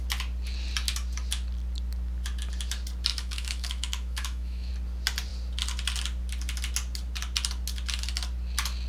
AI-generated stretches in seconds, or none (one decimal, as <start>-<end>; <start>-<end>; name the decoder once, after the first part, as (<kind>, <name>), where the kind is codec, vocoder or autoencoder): 3.1-4.7 (autoencoder, DAC-VAE)